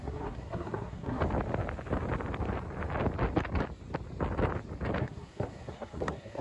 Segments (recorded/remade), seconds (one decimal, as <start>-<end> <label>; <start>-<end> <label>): 0.0-1.2 remade; 1.2-5.0 recorded; 5.0-6.4 remade